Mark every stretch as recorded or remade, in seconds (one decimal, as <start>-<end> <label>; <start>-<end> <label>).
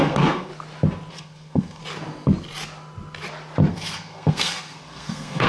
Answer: 0.0-0.5 remade; 0.5-1.1 recorded; 1.1-1.8 remade; 1.8-3.7 recorded; 3.7-5.5 remade